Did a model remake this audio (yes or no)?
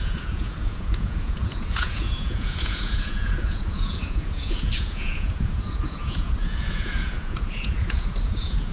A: yes